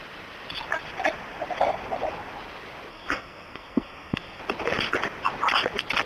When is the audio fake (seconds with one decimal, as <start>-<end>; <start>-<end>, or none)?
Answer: 2.9-4.4